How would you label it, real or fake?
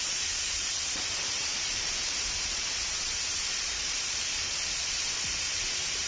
fake